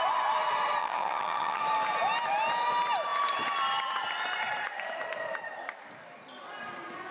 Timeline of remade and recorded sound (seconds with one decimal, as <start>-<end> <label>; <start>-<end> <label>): 0.0-0.8 recorded; 0.8-1.6 remade; 1.6-7.1 recorded